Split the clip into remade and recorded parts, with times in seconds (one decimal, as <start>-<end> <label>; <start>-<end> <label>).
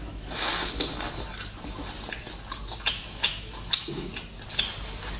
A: 0.0-0.5 remade; 0.5-2.9 recorded; 2.9-4.1 remade; 4.1-5.2 recorded